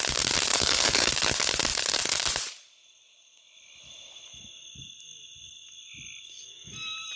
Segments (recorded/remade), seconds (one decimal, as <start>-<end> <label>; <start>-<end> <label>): 0.0-0.5 recorded; 0.5-1.1 remade; 1.1-7.2 recorded